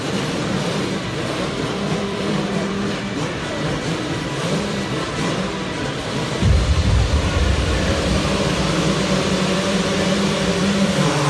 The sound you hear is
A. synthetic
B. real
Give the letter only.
A